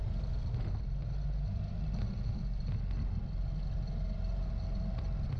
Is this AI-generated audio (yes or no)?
no